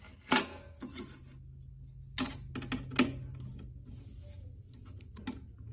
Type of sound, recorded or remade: recorded